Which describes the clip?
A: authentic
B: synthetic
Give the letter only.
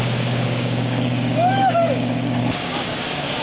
B